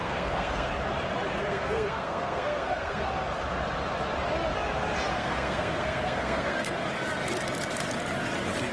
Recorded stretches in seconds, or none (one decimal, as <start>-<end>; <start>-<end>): 0.7-1.4; 3.1-5.1; 6.7-8.7